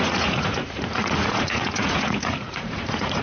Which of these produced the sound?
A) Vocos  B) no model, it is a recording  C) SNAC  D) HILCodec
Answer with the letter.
A